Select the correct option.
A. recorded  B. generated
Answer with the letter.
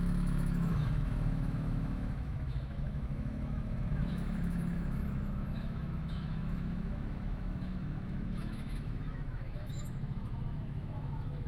B